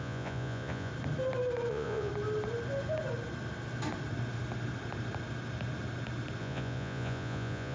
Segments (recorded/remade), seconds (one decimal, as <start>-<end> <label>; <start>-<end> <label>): 0.0-0.9 remade; 0.9-1.7 recorded; 1.7-2.1 remade; 2.1-6.4 recorded; 6.4-7.7 remade